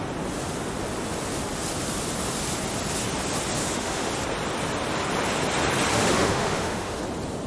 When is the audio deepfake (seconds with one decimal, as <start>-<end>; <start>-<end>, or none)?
3.6-4.1; 5.9-7.0

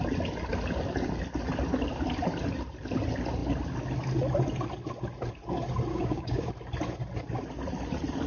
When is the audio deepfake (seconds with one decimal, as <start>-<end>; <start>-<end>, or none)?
5.9-6.5

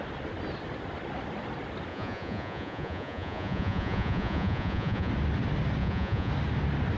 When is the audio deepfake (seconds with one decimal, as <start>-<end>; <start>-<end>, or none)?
1.9-5.1; 5.8-6.3

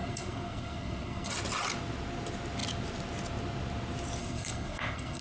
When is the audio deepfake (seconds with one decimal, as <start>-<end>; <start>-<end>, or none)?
0.0-1.3; 4.2-5.2

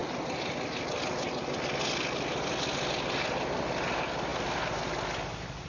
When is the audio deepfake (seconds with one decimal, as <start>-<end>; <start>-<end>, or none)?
none

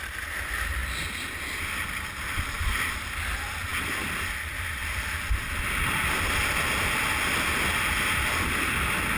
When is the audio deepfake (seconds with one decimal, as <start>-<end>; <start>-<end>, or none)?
none

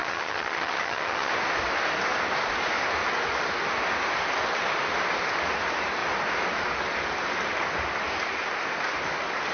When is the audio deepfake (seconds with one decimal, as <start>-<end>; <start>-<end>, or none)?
0.0-1.3